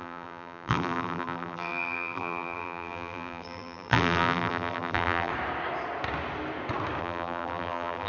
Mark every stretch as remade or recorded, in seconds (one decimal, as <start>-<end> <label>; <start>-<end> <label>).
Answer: 0.0-5.3 remade; 5.3-7.0 recorded; 7.0-8.1 remade